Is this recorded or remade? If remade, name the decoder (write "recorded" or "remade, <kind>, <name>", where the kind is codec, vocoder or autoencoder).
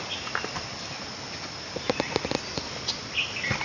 recorded